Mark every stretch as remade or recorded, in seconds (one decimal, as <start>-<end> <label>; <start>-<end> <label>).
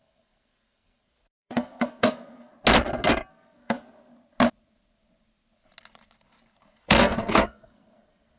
0.0-2.5 remade; 2.5-3.3 recorded; 3.3-4.1 remade; 4.1-6.8 recorded; 6.8-8.4 remade